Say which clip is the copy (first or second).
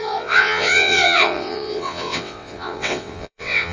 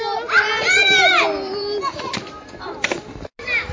first